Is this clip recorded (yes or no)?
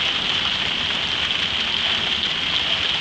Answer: yes